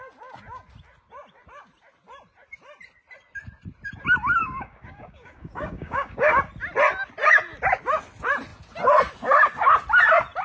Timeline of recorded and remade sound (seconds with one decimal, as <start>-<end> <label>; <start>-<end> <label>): 0.0-4.4 recorded; 4.4-6.4 remade; 6.4-10.4 recorded